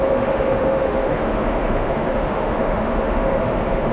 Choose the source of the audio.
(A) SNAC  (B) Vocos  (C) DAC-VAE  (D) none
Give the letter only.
C